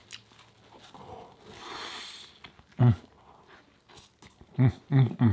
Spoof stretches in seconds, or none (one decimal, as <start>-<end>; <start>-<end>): none